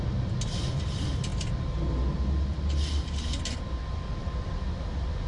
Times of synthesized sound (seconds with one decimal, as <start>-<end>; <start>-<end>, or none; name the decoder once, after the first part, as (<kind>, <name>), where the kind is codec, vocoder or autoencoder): none